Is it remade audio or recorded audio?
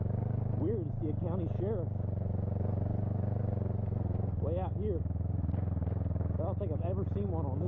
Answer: recorded